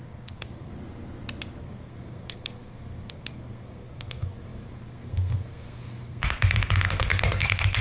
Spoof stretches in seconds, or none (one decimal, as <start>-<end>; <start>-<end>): 0.0-0.7; 1.6-7.8